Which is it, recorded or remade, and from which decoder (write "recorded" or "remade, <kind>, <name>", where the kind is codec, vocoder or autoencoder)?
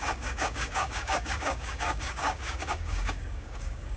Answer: remade, codec, DAC